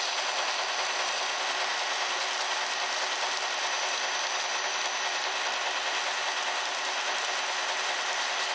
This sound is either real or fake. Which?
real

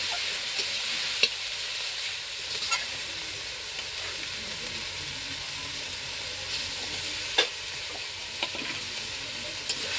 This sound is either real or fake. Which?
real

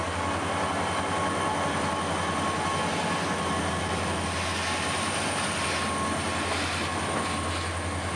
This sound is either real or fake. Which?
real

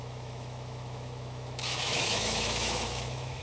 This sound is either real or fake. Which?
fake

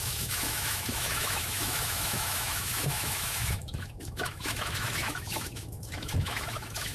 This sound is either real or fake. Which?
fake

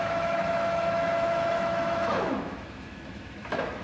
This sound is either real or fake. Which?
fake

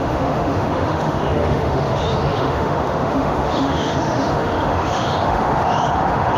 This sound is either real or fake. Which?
fake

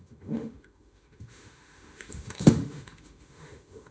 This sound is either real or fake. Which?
fake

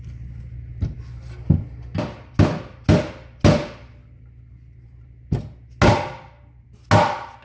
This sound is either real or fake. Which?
real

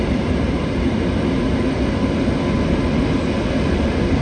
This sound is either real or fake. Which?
real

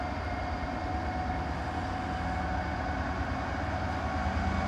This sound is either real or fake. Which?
real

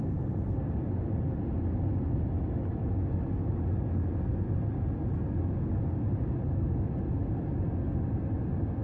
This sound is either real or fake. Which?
real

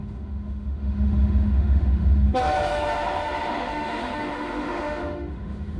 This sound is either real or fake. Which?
fake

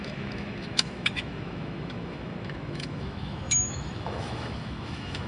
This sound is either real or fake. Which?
fake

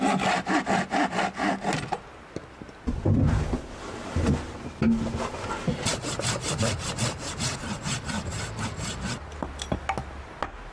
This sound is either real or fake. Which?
real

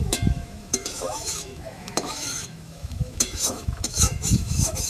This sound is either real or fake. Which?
fake